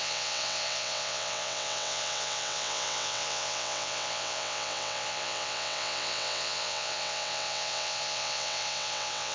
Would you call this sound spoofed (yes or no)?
yes